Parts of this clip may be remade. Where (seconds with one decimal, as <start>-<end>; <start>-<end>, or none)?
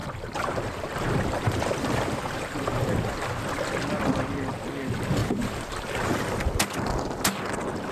0.0-2.9; 5.2-6.5